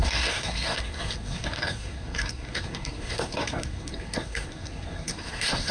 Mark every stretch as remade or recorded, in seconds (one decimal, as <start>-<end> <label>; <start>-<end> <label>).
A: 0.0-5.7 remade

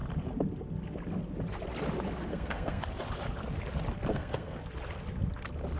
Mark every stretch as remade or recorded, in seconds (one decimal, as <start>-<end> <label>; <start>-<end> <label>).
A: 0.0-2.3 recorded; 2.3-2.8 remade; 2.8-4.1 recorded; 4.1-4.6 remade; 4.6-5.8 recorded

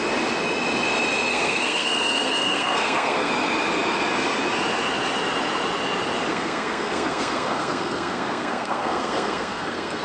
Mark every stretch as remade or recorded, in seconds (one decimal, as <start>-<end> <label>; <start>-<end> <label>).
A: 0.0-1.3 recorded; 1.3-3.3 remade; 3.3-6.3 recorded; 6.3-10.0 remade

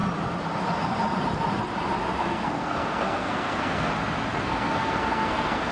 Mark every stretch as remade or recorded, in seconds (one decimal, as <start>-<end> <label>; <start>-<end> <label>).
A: 0.0-2.2 recorded; 2.2-3.9 remade; 3.9-4.3 recorded; 4.3-5.7 remade